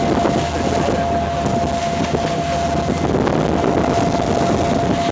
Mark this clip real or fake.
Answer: real